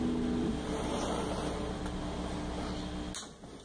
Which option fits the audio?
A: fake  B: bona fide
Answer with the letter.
B